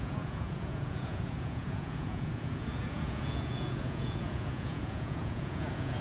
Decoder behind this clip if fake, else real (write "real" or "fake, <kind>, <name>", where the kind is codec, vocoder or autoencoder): fake, vocoder, Vocos